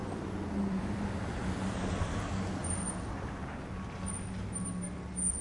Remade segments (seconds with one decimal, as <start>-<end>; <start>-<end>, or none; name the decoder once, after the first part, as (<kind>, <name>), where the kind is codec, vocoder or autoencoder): 0.0-0.8 (vocoder, BigVGAN v2)